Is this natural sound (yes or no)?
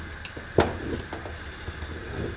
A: yes